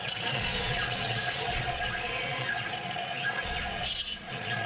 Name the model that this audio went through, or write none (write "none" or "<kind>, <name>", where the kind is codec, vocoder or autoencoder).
vocoder, Vocos